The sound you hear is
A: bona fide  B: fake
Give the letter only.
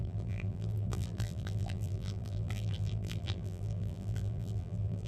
B